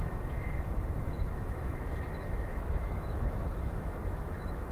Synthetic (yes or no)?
yes